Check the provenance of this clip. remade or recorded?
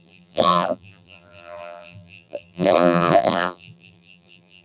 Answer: remade